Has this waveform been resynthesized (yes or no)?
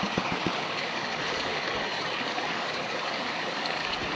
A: yes